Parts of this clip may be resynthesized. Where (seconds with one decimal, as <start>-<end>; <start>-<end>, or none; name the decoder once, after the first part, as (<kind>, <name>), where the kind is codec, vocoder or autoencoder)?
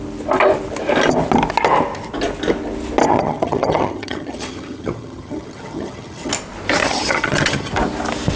3.1-6.3 (vocoder, HiFi-GAN); 6.8-7.7